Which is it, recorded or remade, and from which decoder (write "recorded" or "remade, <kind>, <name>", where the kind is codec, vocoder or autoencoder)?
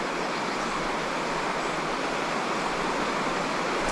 remade, vocoder, BigVGAN v2